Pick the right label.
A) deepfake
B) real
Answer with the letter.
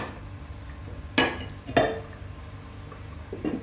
B